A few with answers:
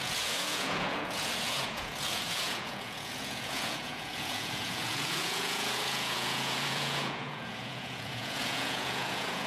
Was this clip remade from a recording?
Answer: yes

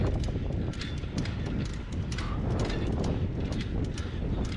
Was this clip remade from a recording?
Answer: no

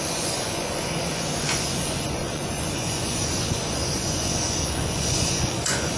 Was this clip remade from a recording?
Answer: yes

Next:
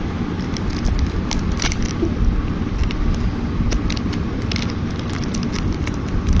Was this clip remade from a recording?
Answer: no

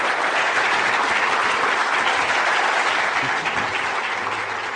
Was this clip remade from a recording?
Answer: no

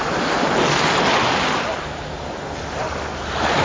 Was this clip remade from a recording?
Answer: no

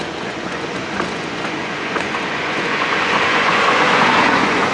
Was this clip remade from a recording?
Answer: yes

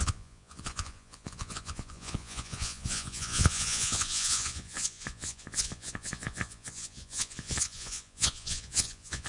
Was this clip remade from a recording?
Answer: yes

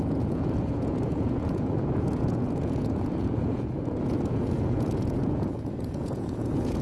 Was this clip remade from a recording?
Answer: yes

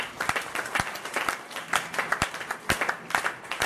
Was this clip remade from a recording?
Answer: no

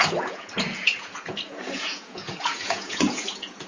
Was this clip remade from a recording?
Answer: yes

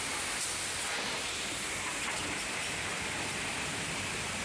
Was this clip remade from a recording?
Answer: no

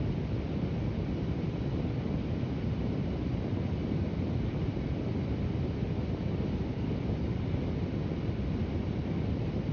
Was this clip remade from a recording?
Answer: no